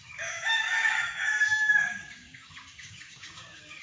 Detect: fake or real fake